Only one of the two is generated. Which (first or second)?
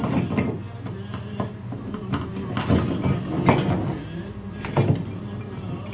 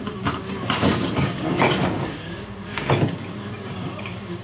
second